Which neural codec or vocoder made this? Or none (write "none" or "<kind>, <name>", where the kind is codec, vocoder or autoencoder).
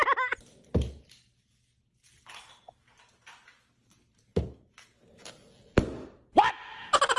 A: none